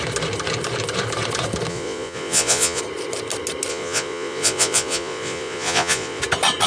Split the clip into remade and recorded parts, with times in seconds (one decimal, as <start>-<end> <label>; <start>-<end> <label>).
0.0-1.7 recorded; 1.7-2.8 remade; 2.8-3.7 recorded; 3.7-6.2 remade; 6.2-6.7 recorded